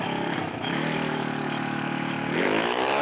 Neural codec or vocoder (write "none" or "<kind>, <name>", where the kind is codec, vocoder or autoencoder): autoencoder, DAC-VAE